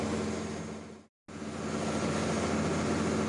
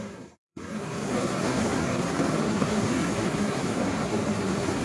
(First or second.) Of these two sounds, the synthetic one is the second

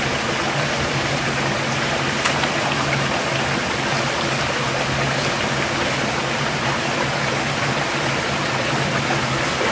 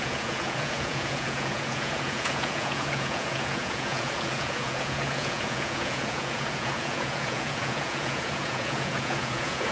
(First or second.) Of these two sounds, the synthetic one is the second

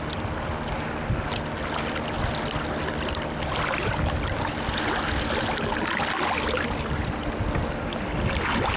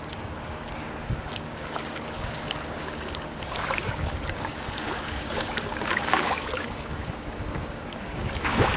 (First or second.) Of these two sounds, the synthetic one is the second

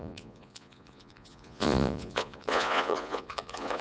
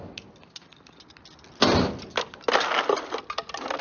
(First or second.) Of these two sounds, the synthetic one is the first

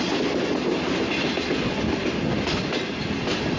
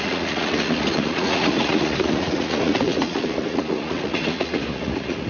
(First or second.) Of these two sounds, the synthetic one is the second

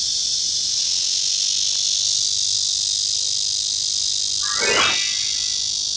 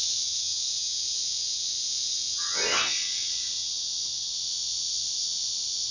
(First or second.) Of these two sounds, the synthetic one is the second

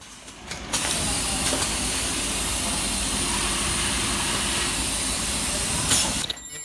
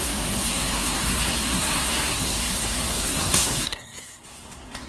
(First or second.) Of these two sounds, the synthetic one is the second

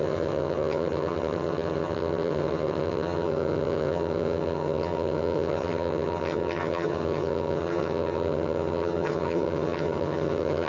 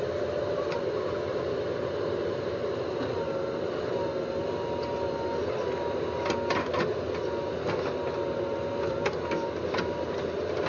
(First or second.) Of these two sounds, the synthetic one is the first